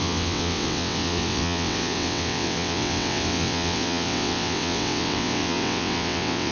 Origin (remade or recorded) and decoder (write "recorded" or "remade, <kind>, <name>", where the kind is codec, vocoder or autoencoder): remade, vocoder, WaveNeXt